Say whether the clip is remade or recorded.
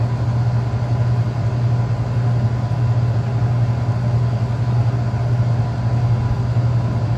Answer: recorded